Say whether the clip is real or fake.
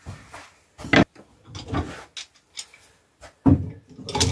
real